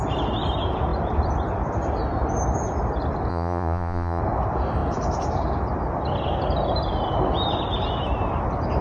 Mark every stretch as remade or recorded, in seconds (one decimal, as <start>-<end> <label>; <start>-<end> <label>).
0.0-3.3 recorded; 3.3-4.2 remade; 4.2-8.8 recorded